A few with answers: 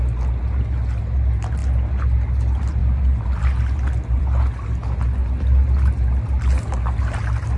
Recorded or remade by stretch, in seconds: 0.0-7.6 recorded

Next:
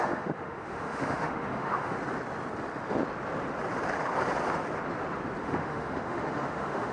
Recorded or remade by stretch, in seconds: 0.0-2.0 remade; 2.0-5.4 recorded; 5.4-6.9 remade